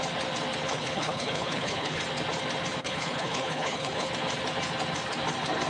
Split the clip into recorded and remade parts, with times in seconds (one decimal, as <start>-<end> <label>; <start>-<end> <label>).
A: 0.0-0.7 recorded; 0.7-2.0 remade; 2.0-2.8 recorded; 2.8-4.1 remade; 4.1-5.7 recorded